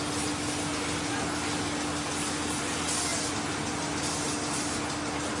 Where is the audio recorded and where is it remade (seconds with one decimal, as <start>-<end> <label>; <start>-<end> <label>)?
0.0-5.4 recorded